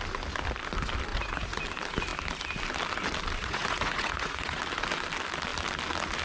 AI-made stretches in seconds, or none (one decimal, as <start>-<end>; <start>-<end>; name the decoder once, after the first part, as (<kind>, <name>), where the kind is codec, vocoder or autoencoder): 1.1-1.6 (vocoder, Vocos); 3.4-4.6